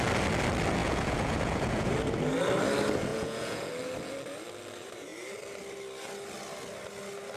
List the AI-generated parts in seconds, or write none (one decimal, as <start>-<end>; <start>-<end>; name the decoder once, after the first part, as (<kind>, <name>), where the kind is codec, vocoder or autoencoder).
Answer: 0.8-1.9 (vocoder, Vocos); 3.1-3.7